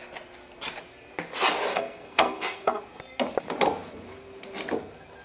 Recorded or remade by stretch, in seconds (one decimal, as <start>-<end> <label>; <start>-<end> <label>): 0.0-1.7 recorded; 1.7-2.8 remade; 2.8-5.2 recorded